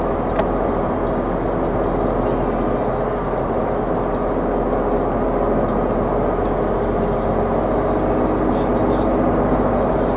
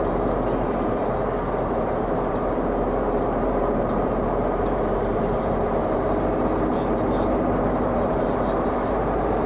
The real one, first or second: first